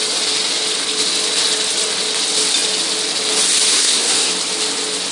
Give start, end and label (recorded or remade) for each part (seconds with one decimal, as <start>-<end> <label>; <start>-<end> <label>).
0.0-3.7 recorded; 3.7-4.3 remade; 4.3-5.1 recorded